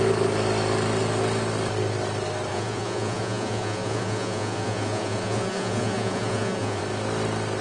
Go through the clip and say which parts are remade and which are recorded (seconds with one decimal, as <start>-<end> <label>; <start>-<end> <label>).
0.0-2.5 recorded; 2.5-6.8 remade; 6.8-7.6 recorded